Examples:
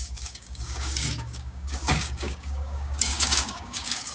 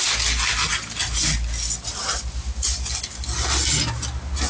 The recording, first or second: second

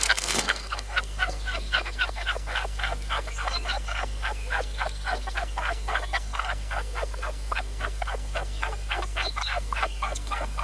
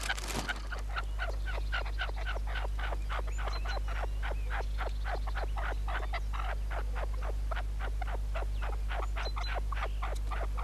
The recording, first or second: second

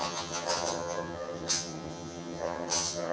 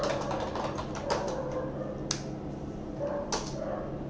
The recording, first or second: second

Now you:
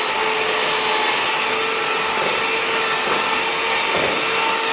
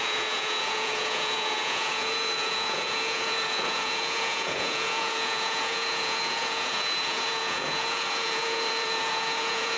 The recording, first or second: first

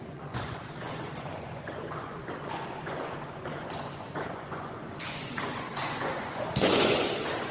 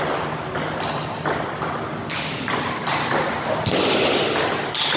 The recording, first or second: second